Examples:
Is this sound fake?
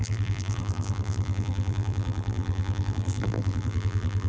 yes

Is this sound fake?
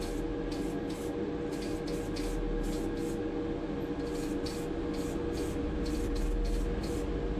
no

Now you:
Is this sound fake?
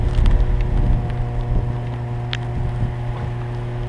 no